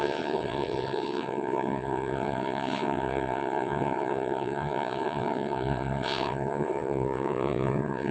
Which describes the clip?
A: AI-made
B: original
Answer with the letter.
A